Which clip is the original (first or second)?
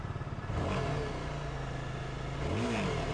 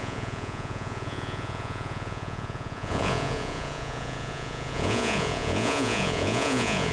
first